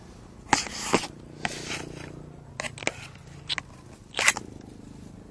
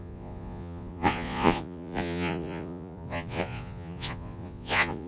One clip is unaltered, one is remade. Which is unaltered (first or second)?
first